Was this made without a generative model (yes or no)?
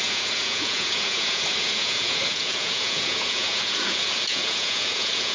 no